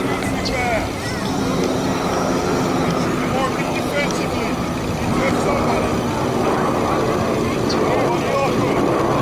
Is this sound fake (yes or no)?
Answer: no